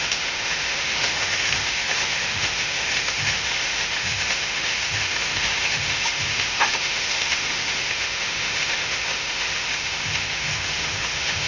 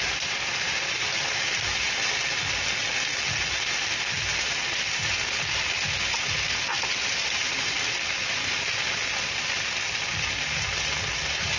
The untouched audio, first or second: second